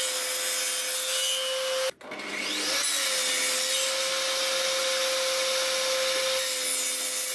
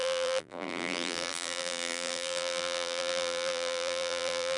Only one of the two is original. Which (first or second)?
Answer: first